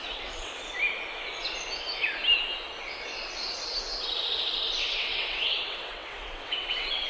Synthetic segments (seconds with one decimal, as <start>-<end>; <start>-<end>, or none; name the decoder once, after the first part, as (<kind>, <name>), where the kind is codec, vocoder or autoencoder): 0.0-0.5 (vocoder, WaveNeXt); 4.8-7.1